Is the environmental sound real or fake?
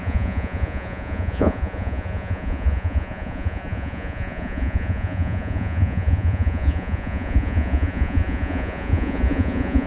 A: fake